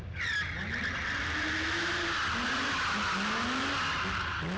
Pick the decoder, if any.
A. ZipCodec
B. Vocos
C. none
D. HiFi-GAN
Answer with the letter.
C